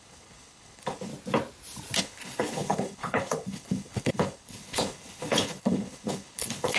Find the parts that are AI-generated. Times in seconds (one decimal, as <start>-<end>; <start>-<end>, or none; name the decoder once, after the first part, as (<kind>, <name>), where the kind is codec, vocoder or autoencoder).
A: 0.0-1.1 (codec, HILCodec); 2.0-6.8